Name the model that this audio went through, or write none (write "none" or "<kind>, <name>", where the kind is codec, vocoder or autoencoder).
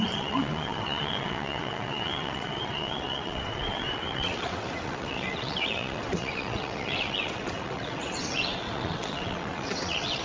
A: vocoder, WaveNeXt